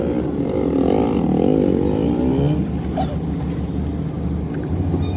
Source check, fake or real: real